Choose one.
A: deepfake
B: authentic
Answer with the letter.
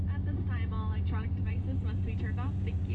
B